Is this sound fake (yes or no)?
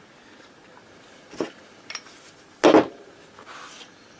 no